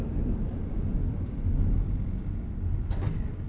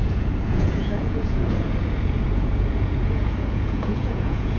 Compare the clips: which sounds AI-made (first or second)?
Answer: second